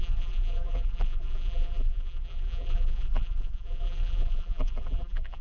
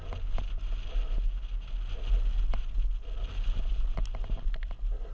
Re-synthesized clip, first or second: first